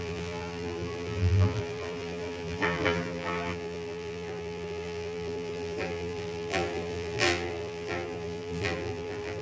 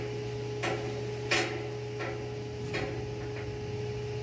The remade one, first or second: first